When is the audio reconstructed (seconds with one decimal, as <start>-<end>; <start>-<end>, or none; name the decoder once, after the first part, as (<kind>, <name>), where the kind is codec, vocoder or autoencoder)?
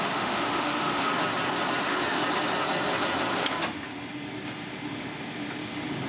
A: 0.0-1.1 (autoencoder, DAC-VAE); 1.8-2.2